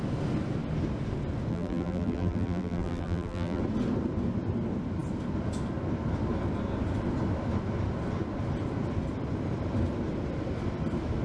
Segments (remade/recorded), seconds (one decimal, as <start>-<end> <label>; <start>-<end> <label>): 0.0-1.5 recorded; 1.5-3.6 remade; 3.6-11.2 recorded